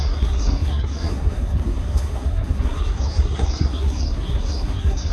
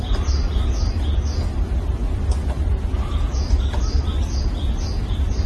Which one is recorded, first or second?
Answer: second